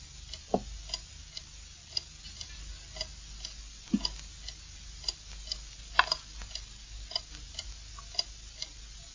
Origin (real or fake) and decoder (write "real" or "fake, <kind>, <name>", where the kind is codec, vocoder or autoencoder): real